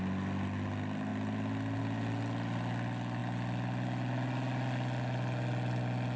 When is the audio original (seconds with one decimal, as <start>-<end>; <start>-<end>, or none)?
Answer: 0.0-6.2